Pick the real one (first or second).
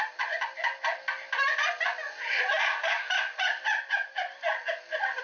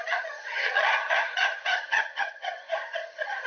first